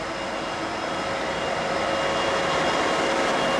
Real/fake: real